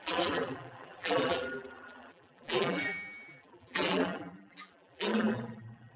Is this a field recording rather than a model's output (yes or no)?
no